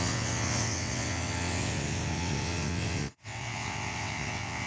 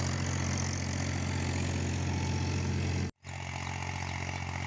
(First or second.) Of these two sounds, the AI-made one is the first